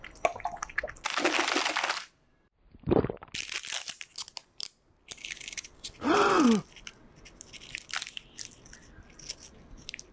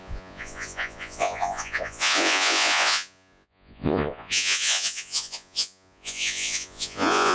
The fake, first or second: second